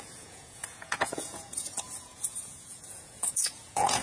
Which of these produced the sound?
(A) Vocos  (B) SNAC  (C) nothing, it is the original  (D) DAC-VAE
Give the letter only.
A